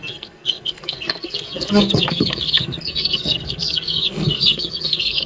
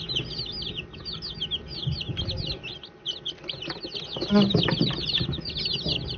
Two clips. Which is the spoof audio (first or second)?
first